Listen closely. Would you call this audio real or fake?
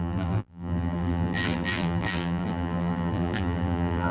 fake